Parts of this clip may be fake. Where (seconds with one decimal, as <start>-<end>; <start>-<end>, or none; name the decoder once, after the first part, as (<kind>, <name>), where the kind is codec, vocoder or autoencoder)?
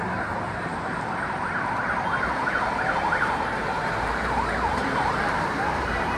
0.0-0.7 (vocoder, BigVGAN v2); 2.5-6.2